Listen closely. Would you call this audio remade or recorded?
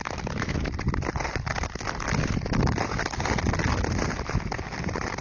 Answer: recorded